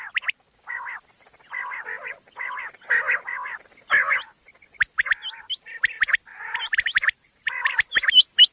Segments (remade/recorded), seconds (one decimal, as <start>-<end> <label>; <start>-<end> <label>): 0.0-6.3 recorded; 6.3-8.1 remade; 8.1-8.5 recorded